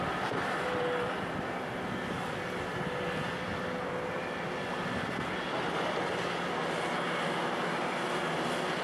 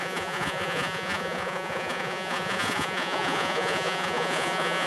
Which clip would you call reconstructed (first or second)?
second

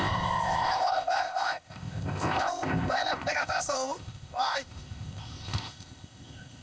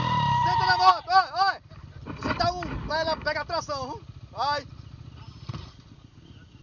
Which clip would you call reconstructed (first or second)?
first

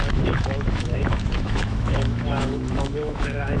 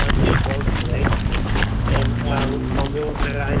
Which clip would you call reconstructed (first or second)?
first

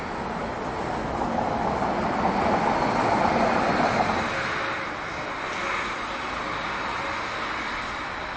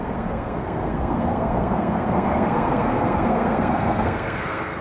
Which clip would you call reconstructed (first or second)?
second